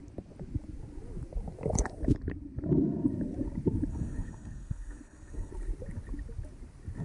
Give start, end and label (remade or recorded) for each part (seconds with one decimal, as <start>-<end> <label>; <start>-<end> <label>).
0.0-3.9 recorded; 3.9-5.5 remade; 5.5-7.0 recorded